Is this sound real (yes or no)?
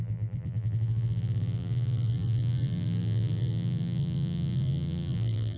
no